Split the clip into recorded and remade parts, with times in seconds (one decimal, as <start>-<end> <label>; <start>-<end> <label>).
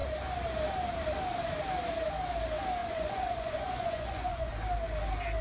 0.0-2.8 recorded; 2.8-4.5 remade; 4.5-5.4 recorded